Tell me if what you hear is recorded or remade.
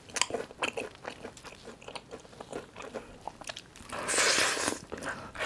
recorded